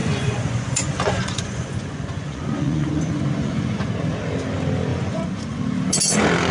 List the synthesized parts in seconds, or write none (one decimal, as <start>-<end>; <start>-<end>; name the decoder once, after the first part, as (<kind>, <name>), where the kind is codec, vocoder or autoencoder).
0.0-3.9 (vocoder, Vocos); 4.9-5.6